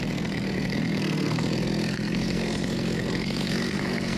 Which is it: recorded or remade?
remade